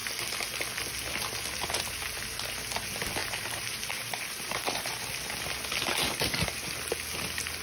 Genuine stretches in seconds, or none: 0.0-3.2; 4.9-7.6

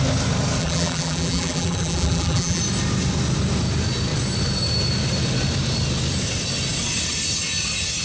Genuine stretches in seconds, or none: 0.0-0.6; 2.6-8.0